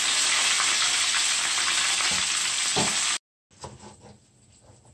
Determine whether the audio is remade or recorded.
recorded